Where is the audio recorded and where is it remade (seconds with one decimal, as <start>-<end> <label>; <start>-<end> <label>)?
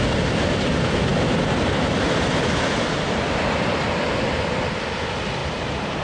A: 0.0-5.4 recorded; 5.4-6.0 remade